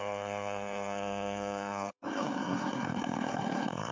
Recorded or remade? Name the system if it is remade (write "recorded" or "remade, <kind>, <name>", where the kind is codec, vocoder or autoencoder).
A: remade, codec, SNAC